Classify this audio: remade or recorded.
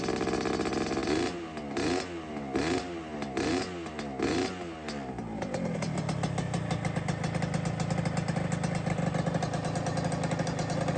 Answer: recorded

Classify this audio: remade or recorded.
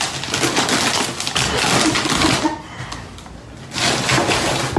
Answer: recorded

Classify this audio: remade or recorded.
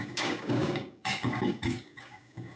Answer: remade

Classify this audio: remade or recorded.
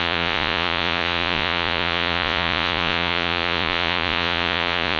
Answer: remade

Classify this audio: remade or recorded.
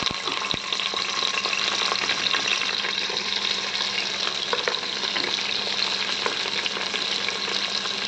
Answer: recorded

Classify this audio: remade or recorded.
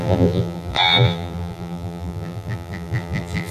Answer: remade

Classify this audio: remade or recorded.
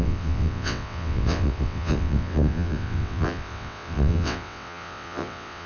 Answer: remade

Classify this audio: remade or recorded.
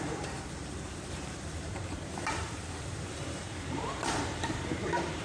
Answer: remade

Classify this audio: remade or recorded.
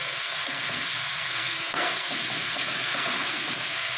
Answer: remade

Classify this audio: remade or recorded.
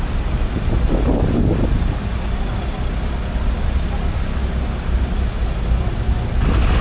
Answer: recorded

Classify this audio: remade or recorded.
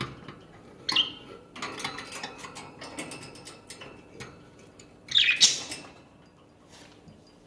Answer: recorded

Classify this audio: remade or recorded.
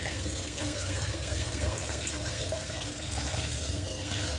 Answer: remade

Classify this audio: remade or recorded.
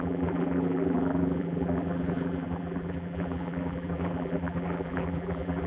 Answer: remade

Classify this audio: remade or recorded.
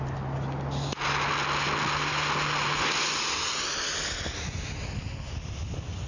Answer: recorded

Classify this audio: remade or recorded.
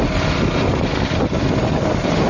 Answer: recorded